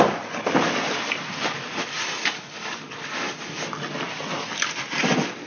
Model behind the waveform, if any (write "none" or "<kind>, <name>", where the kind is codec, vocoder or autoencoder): vocoder, BigVGAN v2